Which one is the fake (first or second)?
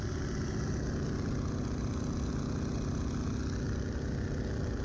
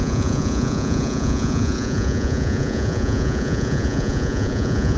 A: second